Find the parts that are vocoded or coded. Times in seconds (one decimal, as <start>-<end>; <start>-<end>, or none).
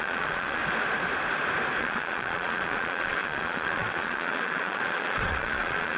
0.0-0.6; 1.8-6.0